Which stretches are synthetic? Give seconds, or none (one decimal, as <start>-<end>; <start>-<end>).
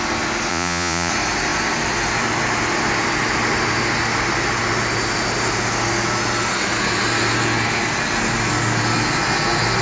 0.5-1.1